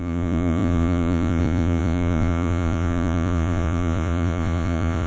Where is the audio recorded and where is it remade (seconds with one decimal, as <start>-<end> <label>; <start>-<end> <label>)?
0.0-5.1 remade